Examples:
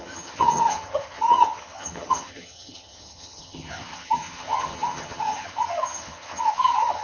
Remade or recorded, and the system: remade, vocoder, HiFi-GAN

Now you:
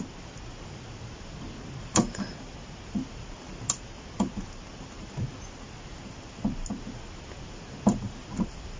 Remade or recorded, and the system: recorded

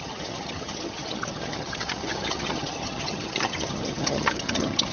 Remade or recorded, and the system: remade, vocoder, HiFi-GAN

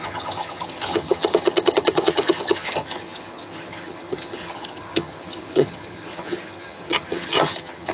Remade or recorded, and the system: remade, vocoder, HiFi-GAN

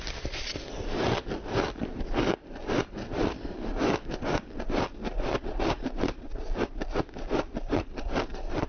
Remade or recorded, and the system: recorded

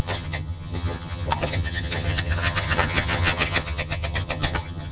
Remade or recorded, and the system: remade, vocoder, HiFi-GAN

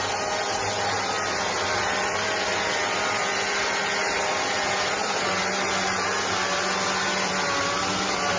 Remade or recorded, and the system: recorded